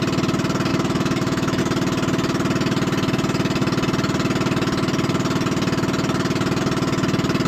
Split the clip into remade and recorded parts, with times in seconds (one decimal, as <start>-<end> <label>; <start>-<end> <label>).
0.0-0.7 recorded; 0.7-1.6 remade; 1.6-7.5 recorded